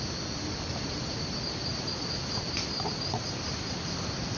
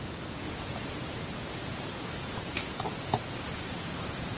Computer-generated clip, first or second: second